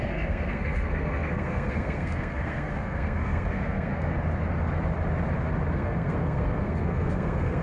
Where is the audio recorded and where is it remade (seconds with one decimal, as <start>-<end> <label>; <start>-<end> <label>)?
0.0-4.1 remade; 4.1-5.7 recorded; 5.7-7.6 remade